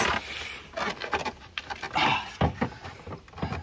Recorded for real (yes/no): yes